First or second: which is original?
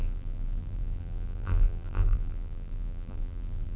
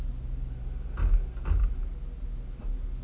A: second